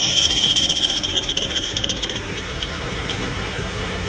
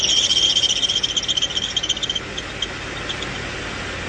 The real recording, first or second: second